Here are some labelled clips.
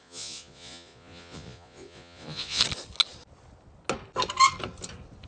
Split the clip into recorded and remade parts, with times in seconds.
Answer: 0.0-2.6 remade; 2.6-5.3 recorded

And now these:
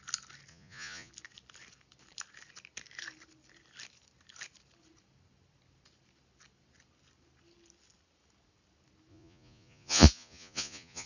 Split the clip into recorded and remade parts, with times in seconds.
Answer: 0.0-0.5 recorded; 0.5-1.1 remade; 1.1-9.1 recorded; 9.1-11.1 remade